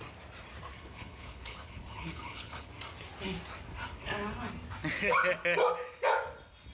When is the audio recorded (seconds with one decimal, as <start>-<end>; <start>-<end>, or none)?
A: 0.0-0.7; 2.7-6.7